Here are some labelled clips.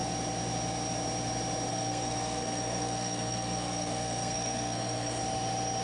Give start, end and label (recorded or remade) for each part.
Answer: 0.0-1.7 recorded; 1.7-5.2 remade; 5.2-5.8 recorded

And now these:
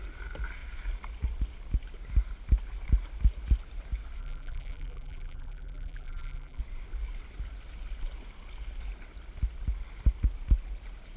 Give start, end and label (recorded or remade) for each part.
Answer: 0.0-4.2 recorded; 4.2-6.6 remade; 6.6-11.2 recorded

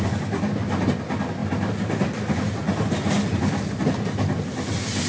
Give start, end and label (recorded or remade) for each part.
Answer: 0.0-1.4 recorded; 1.4-3.4 remade; 3.4-5.1 recorded

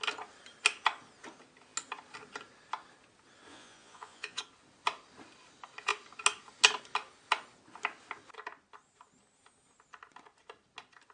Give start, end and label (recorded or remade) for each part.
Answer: 0.0-3.5 recorded; 3.5-4.4 remade; 4.4-11.1 recorded

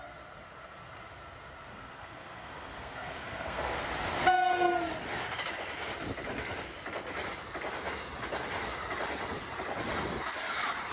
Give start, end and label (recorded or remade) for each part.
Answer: 0.0-1.7 recorded; 1.7-3.9 remade; 3.9-10.9 recorded